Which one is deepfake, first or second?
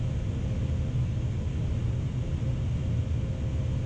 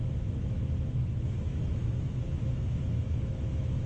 second